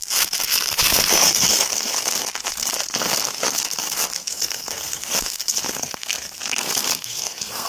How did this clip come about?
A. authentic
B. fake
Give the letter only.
B